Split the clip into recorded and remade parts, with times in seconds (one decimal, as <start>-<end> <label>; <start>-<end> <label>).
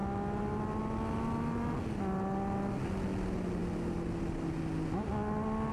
0.0-5.7 recorded